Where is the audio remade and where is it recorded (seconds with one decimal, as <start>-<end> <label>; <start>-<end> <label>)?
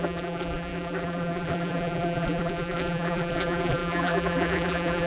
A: 0.0-5.1 remade